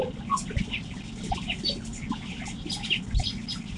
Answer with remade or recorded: recorded